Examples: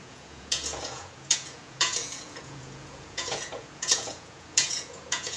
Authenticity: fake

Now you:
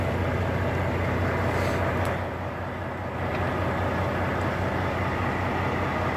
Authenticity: real